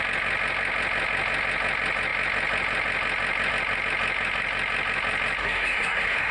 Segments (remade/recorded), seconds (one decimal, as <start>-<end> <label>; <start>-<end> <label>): 0.0-5.4 recorded; 5.4-6.3 remade

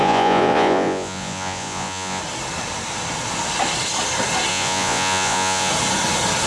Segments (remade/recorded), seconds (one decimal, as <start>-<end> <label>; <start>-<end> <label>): 0.0-2.2 remade; 2.2-4.5 recorded; 4.5-5.7 remade; 5.7-6.5 recorded

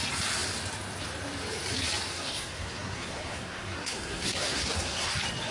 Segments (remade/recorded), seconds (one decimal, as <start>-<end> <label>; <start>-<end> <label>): 0.0-2.1 recorded; 2.1-5.1 remade; 5.1-5.5 recorded

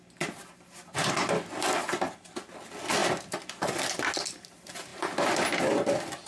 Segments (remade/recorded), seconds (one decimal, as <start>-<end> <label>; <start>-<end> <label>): 0.0-6.3 recorded

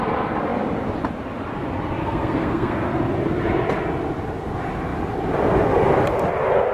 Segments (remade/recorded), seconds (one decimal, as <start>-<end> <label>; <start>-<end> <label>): 0.0-2.0 recorded; 2.0-2.9 remade; 2.9-6.7 recorded

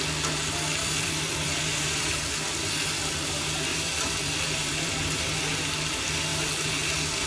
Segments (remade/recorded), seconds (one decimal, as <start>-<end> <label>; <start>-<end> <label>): 0.0-0.8 recorded; 0.8-2.1 remade; 2.1-3.7 recorded; 3.7-4.9 remade; 4.9-7.3 recorded

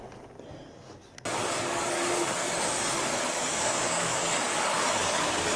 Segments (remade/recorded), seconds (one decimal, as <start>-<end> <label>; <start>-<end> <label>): 0.0-1.4 recorded; 1.4-2.5 remade; 2.5-3.4 recorded; 3.4-5.6 remade